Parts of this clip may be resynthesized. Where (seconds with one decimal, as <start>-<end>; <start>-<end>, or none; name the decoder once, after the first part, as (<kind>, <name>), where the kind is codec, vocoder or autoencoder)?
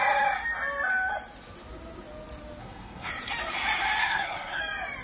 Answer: 2.6-3.1 (codec, SNAC); 4.0-4.6